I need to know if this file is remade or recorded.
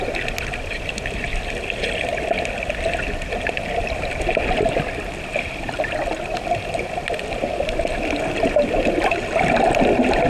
recorded